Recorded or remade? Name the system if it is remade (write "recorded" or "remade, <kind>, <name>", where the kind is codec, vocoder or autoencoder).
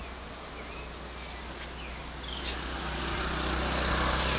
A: recorded